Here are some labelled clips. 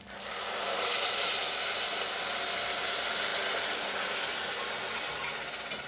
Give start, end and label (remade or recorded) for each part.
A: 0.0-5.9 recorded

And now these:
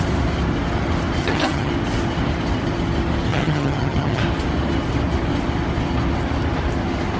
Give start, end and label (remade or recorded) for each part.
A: 0.0-1.2 recorded; 1.2-1.7 remade; 1.7-3.3 recorded; 3.3-4.2 remade; 4.2-7.2 recorded

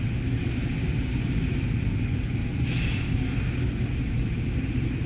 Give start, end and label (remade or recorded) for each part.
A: 0.0-5.1 recorded

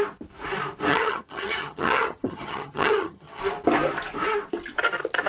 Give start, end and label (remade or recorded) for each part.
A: 0.0-0.9 recorded; 0.9-3.4 remade; 3.4-5.3 recorded

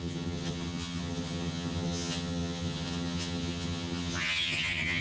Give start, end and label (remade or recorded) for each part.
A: 0.0-5.0 remade

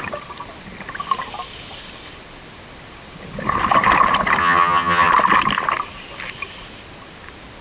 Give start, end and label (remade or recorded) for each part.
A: 0.0-4.4 recorded; 4.4-5.1 remade; 5.1-7.6 recorded

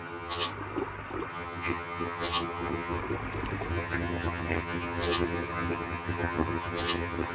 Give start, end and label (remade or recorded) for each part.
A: 0.0-0.5 remade; 0.5-1.3 recorded; 1.3-3.0 remade; 3.0-3.7 recorded; 3.7-7.3 remade